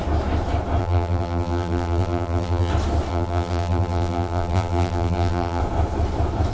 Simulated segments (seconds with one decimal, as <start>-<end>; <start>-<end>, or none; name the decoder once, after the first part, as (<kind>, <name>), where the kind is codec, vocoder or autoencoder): 0.8-2.7 (vocoder, BigVGAN v2); 3.1-5.6